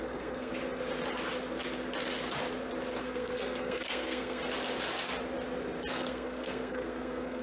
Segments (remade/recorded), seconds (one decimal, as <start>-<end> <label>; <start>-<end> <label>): 0.0-0.5 remade; 0.5-3.0 recorded; 3.0-4.4 remade; 4.4-5.9 recorded; 5.9-7.4 remade